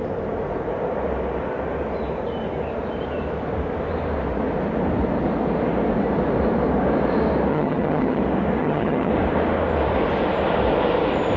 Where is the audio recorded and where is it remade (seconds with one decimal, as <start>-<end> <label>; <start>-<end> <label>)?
0.0-7.5 recorded; 7.5-8.2 remade; 8.2-8.6 recorded; 8.6-9.1 remade; 9.1-11.4 recorded